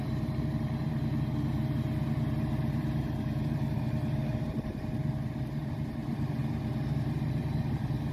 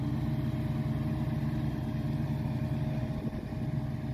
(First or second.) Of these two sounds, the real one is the second